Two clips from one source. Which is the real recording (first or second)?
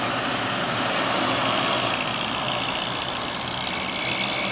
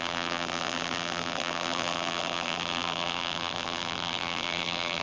first